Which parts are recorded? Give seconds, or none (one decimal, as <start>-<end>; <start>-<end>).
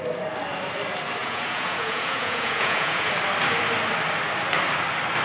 0.0-1.2; 3.1-5.2